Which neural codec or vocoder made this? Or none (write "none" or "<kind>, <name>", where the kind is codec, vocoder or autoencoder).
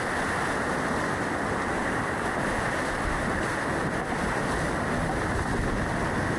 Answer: none